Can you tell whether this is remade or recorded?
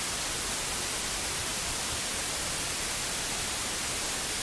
recorded